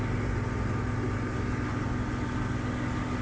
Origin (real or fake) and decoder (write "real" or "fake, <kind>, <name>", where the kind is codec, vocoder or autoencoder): real